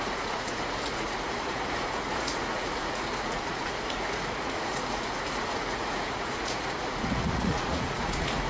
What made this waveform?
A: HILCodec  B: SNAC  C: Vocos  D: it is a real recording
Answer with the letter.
C